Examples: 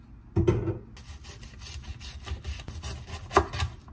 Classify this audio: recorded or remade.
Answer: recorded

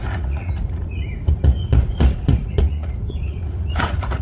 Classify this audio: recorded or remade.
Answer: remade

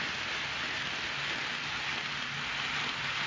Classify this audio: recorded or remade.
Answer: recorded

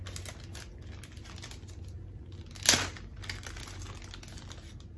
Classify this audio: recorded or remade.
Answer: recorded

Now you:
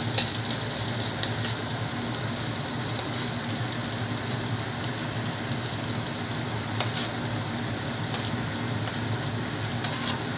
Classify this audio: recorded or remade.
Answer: recorded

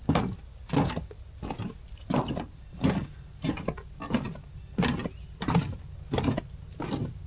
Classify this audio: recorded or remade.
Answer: recorded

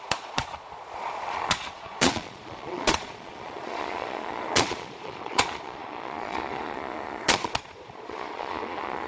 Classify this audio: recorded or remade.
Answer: remade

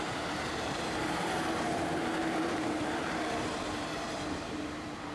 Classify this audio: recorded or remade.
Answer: remade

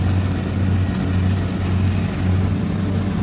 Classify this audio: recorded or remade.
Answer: recorded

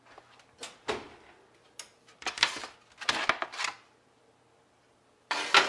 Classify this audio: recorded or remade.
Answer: recorded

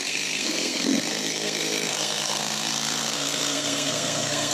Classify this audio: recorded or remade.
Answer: remade